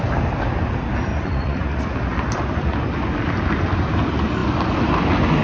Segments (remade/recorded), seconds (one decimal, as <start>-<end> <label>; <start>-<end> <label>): 0.0-1.1 recorded; 1.1-1.8 remade; 1.8-5.4 recorded